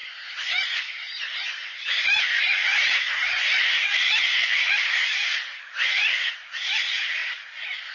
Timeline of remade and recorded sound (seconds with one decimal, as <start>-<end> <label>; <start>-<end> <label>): 0.0-2.4 remade; 2.4-2.8 recorded; 2.8-6.3 remade; 6.3-7.9 recorded